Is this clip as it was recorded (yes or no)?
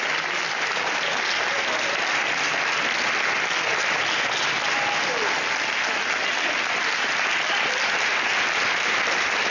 yes